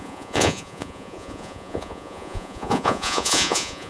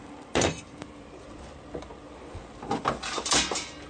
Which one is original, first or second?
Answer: second